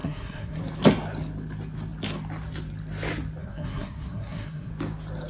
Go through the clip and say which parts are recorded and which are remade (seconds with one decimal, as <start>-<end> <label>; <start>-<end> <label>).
0.0-0.6 remade; 0.6-3.4 recorded; 3.4-4.7 remade; 4.7-5.3 recorded